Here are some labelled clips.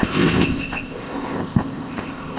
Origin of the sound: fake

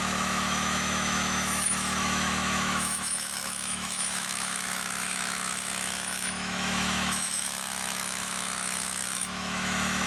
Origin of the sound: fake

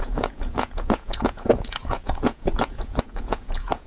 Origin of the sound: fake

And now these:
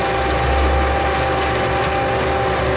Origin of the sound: real